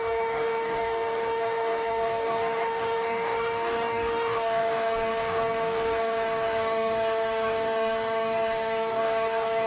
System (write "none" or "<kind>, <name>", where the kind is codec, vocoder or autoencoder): codec, DAC